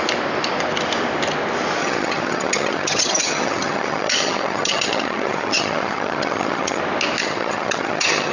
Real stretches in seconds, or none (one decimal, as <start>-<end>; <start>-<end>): 0.0-1.8; 6.8-7.2